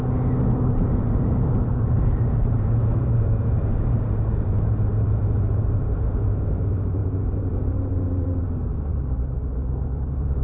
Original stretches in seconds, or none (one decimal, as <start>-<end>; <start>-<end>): 0.0-1.0; 6.2-7.0; 8.4-10.4